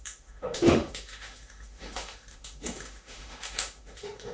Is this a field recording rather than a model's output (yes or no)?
no